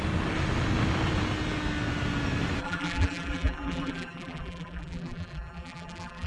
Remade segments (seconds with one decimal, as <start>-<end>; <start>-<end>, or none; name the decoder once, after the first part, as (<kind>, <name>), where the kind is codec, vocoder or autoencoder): 2.6-6.3 (vocoder, BigVGAN v2)